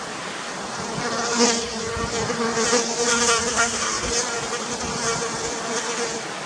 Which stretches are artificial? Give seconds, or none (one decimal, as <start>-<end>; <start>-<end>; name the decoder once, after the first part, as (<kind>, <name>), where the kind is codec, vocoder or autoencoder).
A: 3.5-4.1 (codec, SNAC)